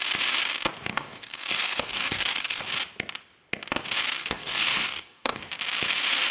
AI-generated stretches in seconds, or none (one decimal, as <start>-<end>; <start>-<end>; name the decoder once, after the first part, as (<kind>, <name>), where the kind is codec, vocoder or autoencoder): 0.9-2.6 (codec, DAC); 4.2-5.4